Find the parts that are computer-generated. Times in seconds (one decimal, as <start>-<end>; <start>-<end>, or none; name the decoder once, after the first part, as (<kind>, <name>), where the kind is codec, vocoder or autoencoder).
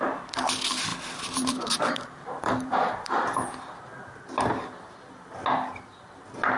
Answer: 0.9-4.2 (vocoder, BigVGAN v2)